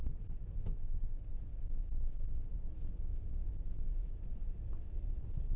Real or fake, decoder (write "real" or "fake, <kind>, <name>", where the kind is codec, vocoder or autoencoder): real